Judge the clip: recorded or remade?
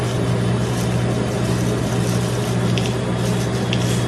recorded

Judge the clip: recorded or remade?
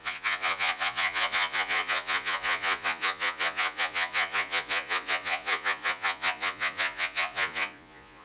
remade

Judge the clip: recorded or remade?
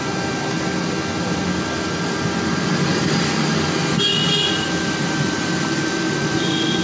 recorded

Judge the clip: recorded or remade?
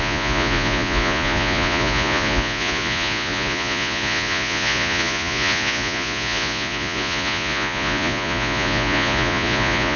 remade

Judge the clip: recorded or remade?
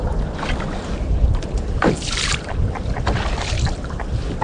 recorded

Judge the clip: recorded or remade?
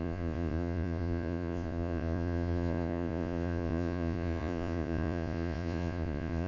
remade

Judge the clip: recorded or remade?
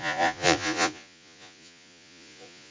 remade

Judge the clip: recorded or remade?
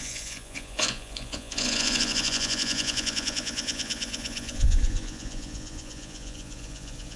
remade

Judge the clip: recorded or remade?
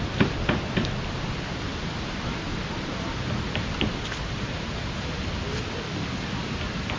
recorded